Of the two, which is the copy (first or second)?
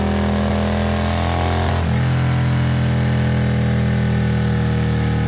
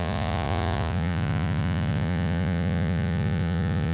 second